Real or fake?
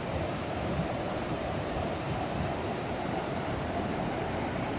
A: fake